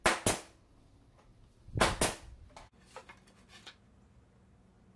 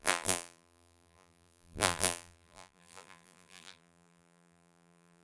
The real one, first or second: first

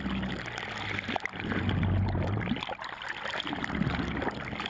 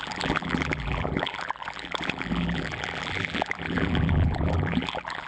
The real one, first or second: first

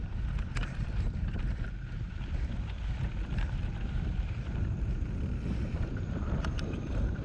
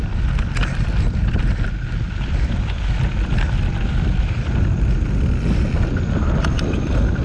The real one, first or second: second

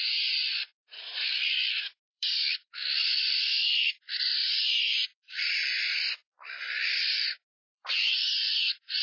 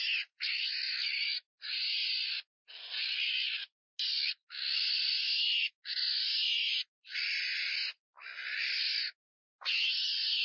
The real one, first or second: second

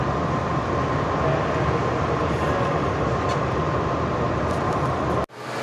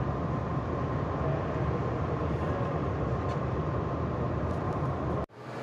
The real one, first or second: first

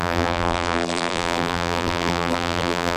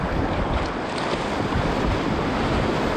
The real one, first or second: second